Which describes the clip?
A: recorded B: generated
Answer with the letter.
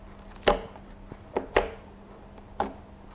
A